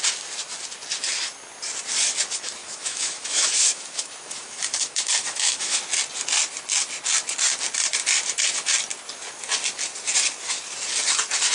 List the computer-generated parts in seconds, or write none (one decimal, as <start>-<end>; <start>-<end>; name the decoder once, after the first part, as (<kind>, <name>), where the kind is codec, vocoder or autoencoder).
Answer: 2.6-5.8 (autoencoder, DAC-VAE)

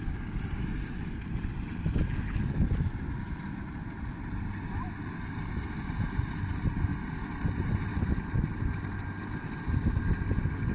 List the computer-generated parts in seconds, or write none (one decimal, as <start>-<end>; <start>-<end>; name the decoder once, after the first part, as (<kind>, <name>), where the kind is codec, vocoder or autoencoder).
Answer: 0.0-6.9 (vocoder, BigVGAN v2); 7.9-10.7

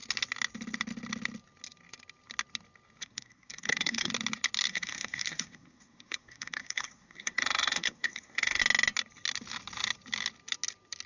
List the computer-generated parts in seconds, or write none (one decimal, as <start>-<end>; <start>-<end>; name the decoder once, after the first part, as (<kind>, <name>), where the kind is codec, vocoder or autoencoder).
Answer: 3.0-4.1 (codec, SNAC); 4.7-8.6

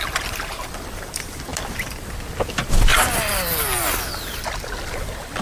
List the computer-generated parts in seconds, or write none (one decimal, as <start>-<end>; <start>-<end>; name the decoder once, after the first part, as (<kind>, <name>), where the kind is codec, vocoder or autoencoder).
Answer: none

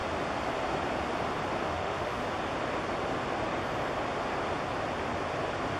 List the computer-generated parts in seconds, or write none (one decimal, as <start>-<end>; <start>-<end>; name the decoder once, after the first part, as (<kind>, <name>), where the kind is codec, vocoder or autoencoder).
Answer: 1.6-2.2 (autoencoder, DAC-VAE)